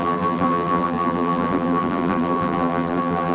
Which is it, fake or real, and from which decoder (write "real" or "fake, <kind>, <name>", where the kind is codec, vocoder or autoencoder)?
fake, vocoder, BigVGAN v2